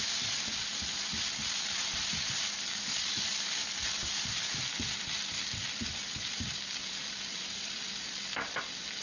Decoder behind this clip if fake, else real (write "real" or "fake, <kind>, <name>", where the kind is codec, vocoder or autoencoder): real